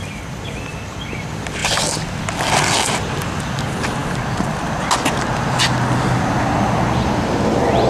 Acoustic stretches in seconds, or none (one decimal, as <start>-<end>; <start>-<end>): 0.0-7.9